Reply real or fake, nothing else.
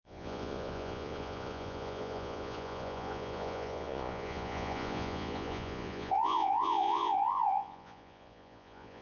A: fake